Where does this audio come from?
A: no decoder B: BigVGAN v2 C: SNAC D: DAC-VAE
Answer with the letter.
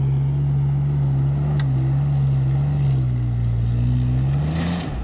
A